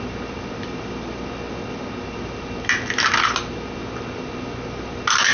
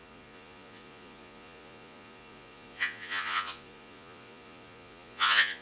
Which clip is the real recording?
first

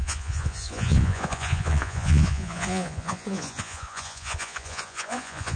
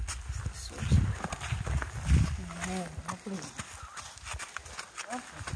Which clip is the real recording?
second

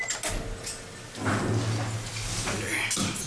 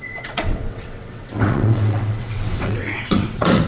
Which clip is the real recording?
first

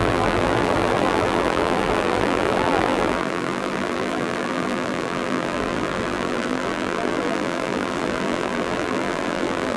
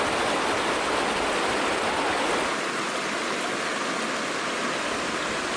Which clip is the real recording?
second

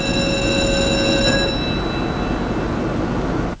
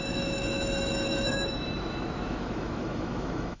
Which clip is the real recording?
first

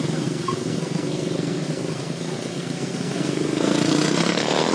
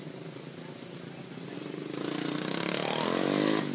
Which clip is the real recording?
second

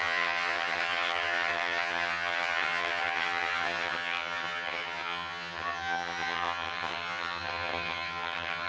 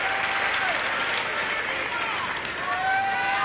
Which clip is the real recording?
second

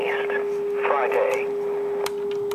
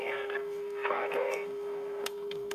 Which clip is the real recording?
first